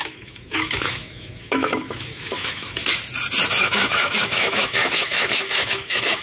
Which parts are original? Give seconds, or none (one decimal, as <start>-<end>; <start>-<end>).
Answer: 2.8-3.6